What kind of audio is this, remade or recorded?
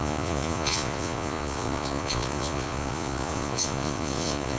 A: remade